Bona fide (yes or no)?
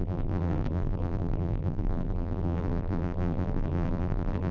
no